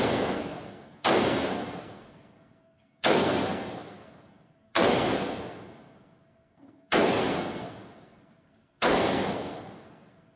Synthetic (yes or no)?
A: yes